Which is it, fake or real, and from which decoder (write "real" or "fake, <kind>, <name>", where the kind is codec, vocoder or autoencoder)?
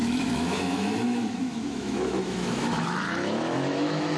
fake, autoencoder, DAC-VAE